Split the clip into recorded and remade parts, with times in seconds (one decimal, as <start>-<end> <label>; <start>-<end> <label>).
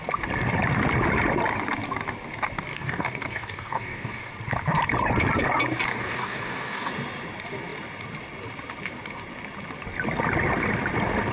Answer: 0.0-2.7 recorded; 2.7-4.3 remade; 4.3-5.9 recorded; 5.9-6.9 remade; 6.9-11.3 recorded